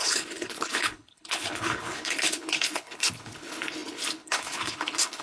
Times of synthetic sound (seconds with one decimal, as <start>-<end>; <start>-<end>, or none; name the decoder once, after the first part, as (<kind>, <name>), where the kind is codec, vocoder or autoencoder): 0.0-5.2 (codec, HILCodec)